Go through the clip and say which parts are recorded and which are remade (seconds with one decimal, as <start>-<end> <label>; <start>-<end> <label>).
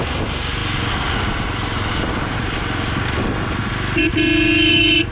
0.0-5.1 recorded